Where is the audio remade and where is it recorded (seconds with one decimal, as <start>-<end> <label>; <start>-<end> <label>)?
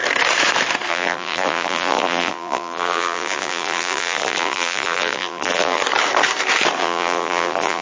0.0-0.9 recorded; 0.9-5.8 remade; 5.8-6.8 recorded; 6.8-7.8 remade